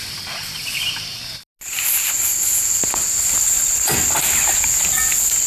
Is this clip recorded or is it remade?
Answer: recorded